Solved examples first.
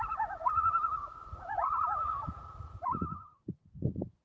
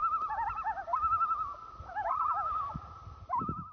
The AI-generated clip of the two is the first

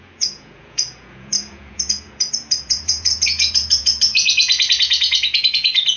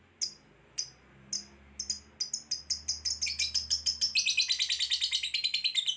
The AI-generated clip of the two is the first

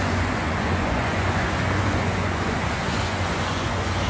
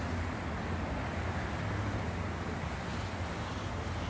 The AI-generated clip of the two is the first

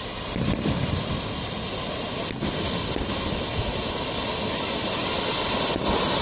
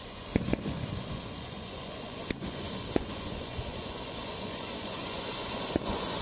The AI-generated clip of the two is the second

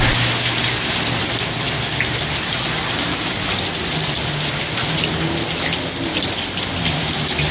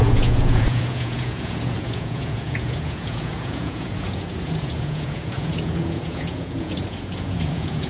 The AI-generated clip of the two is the second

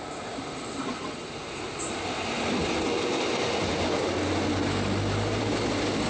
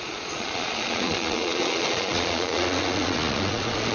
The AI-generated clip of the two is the second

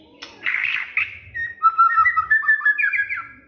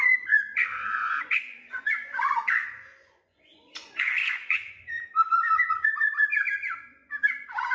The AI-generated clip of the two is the second